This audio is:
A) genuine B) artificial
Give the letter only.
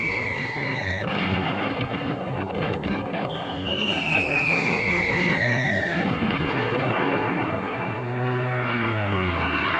B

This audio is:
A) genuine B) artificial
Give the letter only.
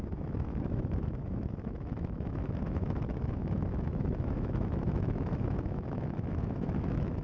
B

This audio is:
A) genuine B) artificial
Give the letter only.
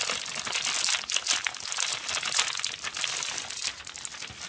A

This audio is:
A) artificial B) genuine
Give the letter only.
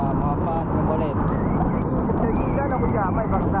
B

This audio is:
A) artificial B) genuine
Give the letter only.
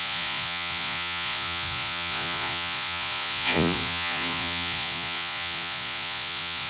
A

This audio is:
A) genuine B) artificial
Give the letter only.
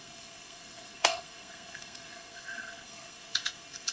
B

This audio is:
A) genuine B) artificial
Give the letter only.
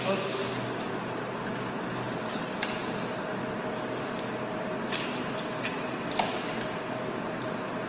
A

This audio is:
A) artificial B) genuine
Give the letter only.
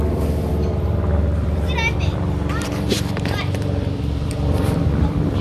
A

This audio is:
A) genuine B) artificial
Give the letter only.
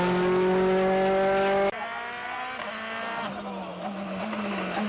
A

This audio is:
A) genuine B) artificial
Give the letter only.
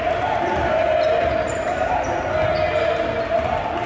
A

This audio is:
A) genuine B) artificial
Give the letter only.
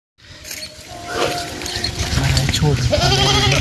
A